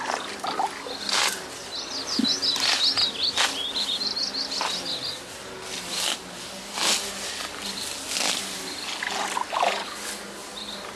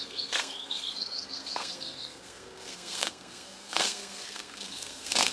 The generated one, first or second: second